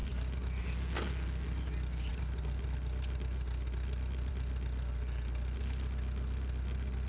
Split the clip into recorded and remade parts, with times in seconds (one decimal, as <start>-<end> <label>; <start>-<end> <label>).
0.0-7.1 recorded